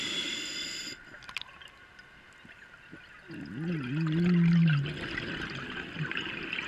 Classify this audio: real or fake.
real